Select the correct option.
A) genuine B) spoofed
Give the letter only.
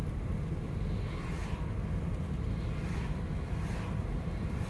A